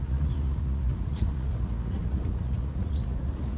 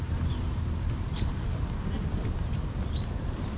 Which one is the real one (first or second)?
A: second